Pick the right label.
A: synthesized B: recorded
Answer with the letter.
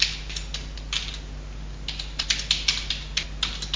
B